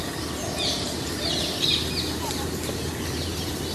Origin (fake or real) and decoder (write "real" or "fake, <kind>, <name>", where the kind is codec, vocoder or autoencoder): real